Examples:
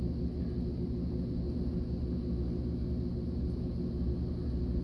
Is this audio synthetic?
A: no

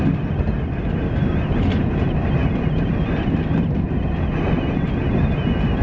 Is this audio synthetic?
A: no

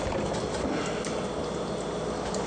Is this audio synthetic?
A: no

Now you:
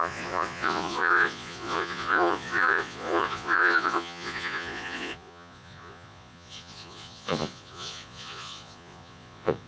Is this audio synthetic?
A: yes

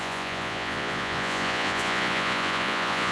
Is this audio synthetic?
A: yes